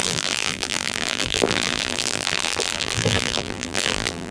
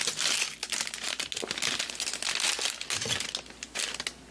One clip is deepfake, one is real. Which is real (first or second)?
second